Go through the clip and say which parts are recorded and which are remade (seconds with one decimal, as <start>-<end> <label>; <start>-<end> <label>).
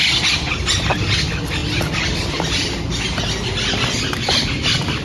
0.0-5.0 recorded